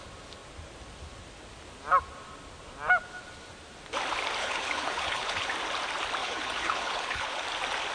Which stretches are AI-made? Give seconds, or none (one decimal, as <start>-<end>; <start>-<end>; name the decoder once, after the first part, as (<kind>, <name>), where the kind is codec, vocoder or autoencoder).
4.4-5.5 (codec, HILCodec); 6.2-7.4